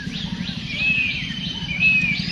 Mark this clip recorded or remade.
remade